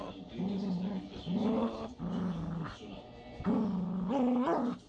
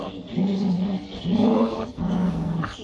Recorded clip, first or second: first